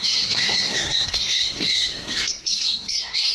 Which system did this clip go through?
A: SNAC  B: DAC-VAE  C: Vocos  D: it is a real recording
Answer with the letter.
A